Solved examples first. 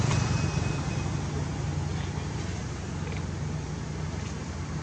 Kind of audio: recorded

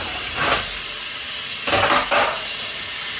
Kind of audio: recorded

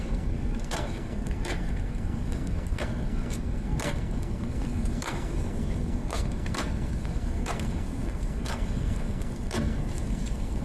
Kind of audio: remade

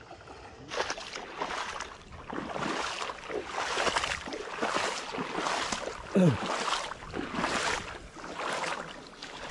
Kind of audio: recorded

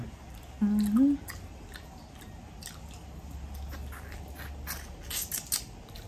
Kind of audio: recorded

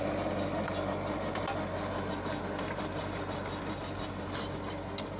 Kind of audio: recorded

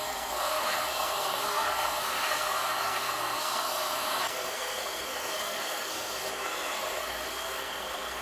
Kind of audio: remade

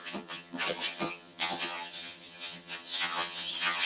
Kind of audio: remade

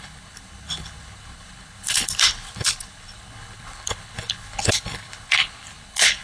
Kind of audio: remade